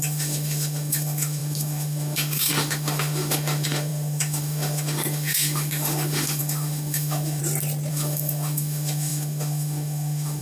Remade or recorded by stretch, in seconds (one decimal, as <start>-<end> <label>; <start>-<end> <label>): 0.0-7.4 remade; 7.4-7.9 recorded; 7.9-10.4 remade